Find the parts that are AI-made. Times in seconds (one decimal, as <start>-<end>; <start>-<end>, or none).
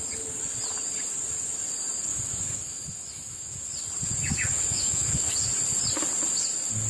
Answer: 2.1-3.7; 4.5-5.3